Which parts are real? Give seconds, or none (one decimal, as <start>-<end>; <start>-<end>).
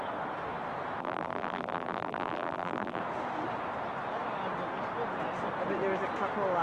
0.0-1.0; 3.0-6.6